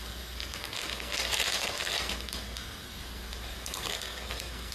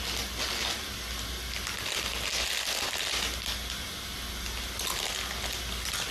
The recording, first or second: second